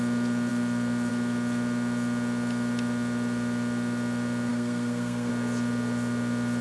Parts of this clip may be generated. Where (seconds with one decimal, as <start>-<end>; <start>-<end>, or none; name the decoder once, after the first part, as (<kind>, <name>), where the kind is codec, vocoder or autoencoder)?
4.5-5.3 (codec, SNAC)